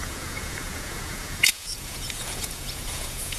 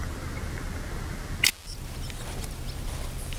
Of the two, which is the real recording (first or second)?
second